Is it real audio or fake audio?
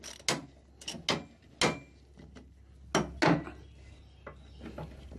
real